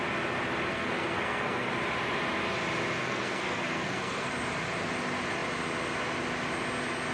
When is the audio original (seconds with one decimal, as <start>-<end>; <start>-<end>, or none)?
0.0-0.7; 1.7-3.0; 4.3-7.1